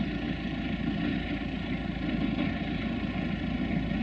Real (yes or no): yes